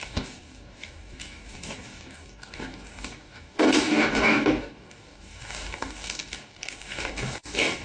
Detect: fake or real fake